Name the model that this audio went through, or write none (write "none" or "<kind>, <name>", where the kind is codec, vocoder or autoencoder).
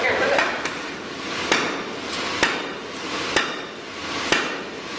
none